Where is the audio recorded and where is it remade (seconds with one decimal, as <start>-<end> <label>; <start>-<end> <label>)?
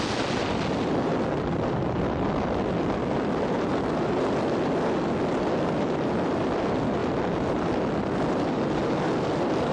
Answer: 0.0-9.7 recorded